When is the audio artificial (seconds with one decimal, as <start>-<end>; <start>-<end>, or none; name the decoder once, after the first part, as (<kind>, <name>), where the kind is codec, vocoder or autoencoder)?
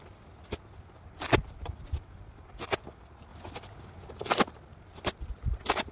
none